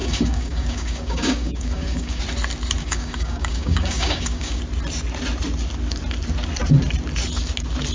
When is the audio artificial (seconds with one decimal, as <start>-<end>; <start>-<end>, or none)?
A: 0.0-2.2; 2.8-4.6